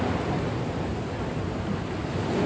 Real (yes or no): yes